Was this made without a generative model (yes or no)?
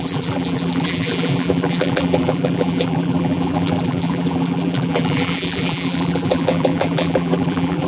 no